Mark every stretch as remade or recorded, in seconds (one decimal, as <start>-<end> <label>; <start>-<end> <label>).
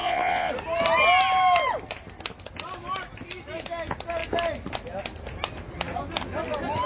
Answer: 0.0-0.5 remade; 0.5-6.9 recorded